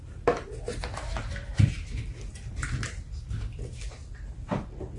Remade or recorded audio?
recorded